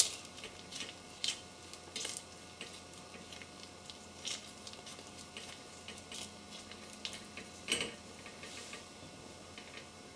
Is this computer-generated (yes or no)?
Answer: no